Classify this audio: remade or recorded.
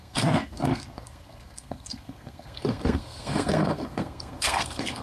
remade